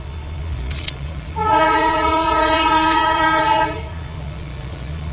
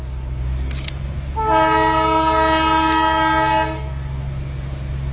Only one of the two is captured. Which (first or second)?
second